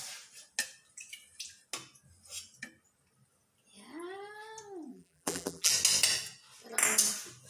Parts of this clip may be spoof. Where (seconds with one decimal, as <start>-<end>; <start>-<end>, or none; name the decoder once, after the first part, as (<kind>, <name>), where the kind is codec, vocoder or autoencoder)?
4.9-5.7 (vocoder, BigVGAN v2)